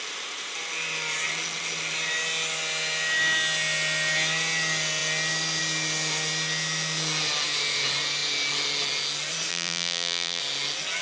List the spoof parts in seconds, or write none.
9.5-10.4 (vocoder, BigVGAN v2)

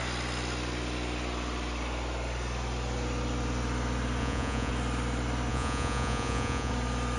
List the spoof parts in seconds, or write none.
4.2-4.7 (vocoder, Vocos); 5.5-6.7

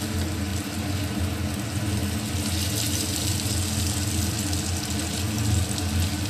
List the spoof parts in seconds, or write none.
none

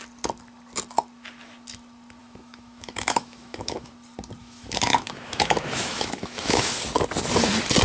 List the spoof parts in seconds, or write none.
2.2-3.9 (autoencoder, DAC-VAE); 4.4-6.7

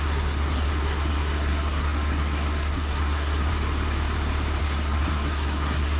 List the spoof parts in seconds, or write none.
0.0-3.5 (codec, SNAC); 4.6-6.0

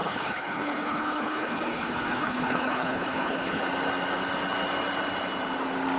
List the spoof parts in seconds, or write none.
0.0-3.6 (codec, HILCodec)